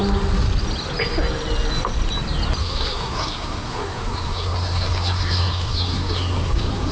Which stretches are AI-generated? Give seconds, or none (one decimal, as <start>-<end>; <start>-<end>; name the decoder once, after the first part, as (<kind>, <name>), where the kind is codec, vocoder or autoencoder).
2.6-6.9 (codec, SNAC)